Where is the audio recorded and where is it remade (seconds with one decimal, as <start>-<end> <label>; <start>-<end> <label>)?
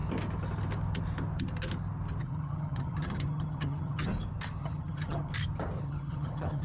0.0-2.2 recorded; 2.2-4.1 remade; 4.1-4.6 recorded; 4.6-5.3 remade; 5.3-5.8 recorded; 5.8-6.6 remade